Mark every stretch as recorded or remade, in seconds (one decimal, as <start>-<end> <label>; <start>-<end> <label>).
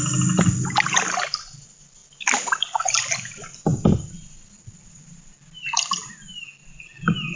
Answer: 0.0-7.4 recorded